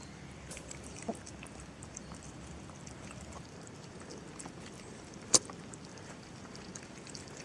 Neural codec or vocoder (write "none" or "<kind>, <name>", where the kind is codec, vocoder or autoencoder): vocoder, BigVGAN v2